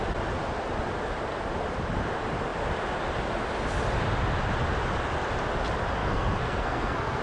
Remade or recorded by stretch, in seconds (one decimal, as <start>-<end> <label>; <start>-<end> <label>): 0.0-6.0 recorded; 6.0-7.2 remade